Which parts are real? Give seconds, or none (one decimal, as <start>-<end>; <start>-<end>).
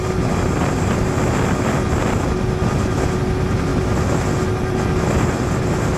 0.0-6.0